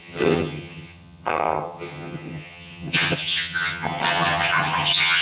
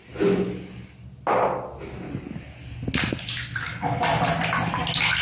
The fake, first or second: first